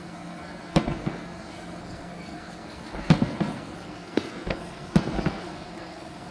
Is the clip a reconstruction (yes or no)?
yes